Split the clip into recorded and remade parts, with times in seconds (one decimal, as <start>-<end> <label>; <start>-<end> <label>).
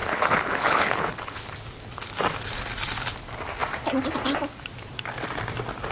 0.0-1.5 remade; 1.5-5.9 recorded